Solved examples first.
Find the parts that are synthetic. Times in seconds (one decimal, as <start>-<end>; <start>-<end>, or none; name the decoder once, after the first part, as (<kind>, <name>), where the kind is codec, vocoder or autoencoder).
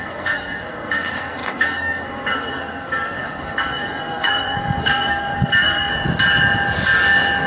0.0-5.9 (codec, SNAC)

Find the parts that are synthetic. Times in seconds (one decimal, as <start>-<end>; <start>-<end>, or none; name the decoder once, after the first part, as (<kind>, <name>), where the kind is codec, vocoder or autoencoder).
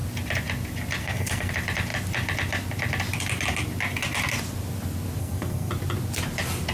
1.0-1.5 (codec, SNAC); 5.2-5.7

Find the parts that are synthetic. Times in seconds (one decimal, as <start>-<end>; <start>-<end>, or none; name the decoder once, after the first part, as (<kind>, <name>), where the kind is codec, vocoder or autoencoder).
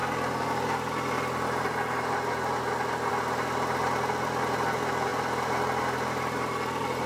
none